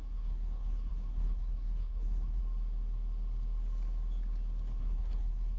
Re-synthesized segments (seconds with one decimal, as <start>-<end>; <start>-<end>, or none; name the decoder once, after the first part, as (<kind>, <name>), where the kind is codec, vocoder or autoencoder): 0.0-2.4 (codec, SNAC); 4.8-5.6